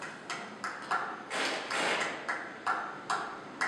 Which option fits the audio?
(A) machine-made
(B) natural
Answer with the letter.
B